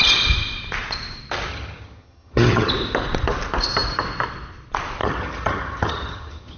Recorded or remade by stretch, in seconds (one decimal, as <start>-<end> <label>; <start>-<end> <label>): 0.0-1.5 recorded; 1.5-2.7 remade; 2.7-5.0 recorded; 5.0-6.6 remade